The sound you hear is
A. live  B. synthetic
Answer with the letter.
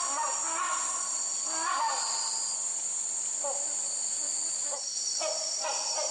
A